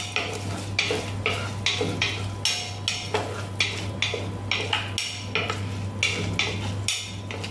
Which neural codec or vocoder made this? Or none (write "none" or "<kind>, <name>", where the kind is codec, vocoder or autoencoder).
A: none